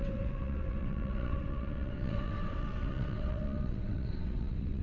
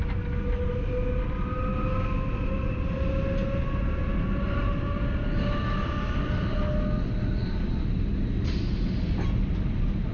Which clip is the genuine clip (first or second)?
second